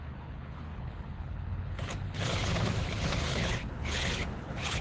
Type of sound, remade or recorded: remade